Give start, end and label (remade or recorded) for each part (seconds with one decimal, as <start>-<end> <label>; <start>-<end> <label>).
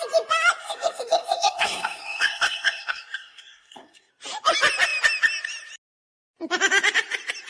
0.0-0.6 recorded; 0.6-4.1 remade; 4.1-7.5 recorded